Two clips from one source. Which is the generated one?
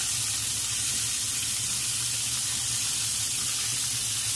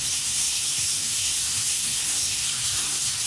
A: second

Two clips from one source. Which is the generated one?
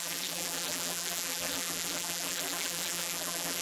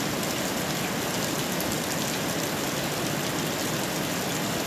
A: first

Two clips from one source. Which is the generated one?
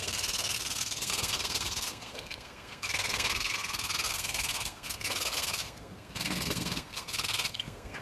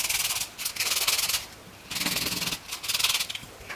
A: first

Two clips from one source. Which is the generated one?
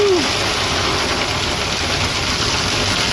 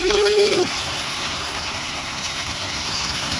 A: second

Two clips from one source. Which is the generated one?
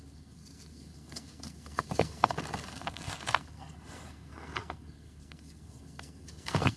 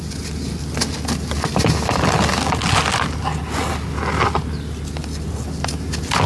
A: first